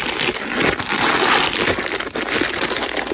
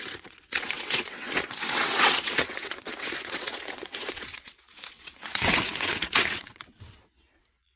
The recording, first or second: first